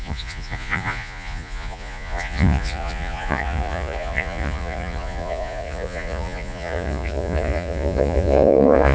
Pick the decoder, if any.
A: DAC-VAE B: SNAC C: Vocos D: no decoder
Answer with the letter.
C